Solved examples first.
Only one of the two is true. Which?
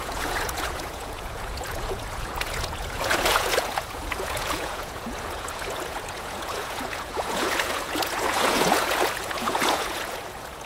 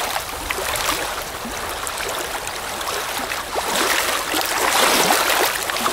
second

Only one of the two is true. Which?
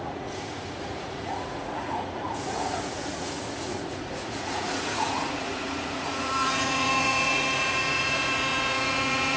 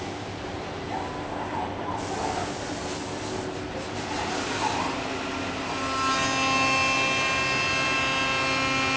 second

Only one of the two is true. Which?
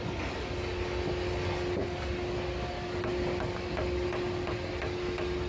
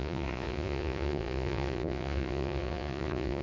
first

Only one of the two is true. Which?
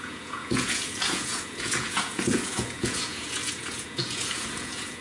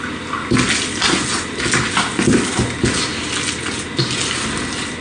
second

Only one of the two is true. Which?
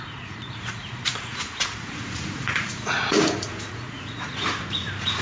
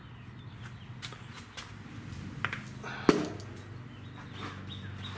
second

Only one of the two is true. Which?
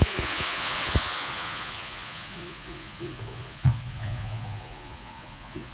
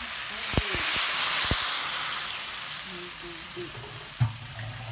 second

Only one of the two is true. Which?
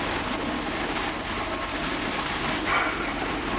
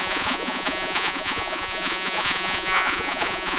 first